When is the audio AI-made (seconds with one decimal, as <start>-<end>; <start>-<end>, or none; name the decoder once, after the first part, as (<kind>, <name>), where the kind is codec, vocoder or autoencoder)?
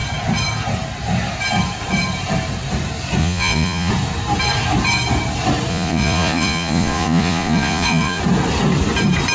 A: 3.2-3.9 (vocoder, Vocos); 5.7-8.2